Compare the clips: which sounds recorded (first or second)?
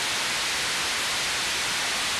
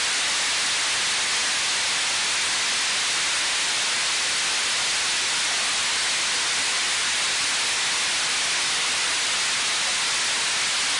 second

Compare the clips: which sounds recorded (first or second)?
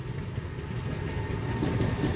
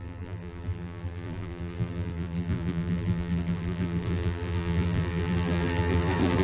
first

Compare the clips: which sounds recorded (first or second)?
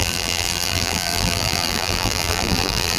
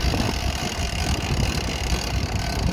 second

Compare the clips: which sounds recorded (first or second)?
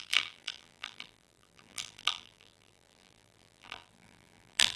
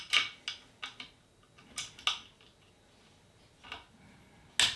second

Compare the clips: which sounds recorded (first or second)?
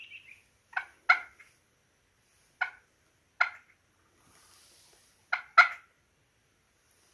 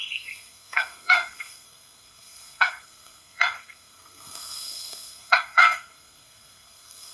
first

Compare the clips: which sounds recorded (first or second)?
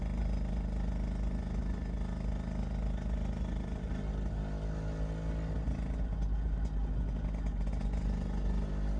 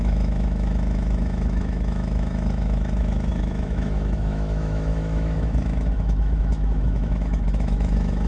first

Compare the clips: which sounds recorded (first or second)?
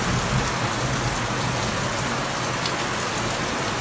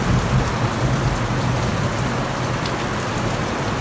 first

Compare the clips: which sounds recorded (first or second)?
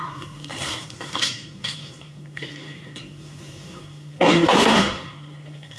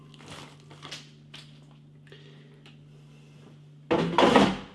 second